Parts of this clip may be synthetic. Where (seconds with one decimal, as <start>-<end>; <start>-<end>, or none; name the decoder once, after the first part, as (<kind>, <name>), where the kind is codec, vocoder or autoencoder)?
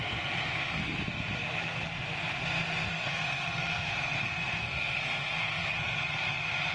0.4-1.0 (codec, SNAC); 2.9-6.0